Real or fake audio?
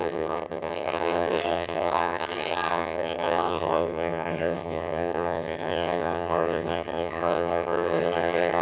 fake